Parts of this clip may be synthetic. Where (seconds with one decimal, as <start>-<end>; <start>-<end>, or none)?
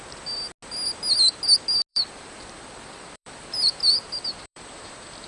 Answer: 1.9-4.6